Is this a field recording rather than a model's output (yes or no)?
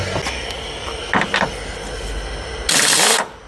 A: yes